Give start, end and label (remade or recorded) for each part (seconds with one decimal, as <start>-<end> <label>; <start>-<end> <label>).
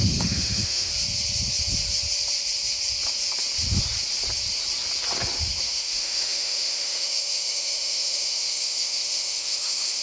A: 0.0-0.9 remade; 0.9-5.6 recorded; 5.6-10.0 remade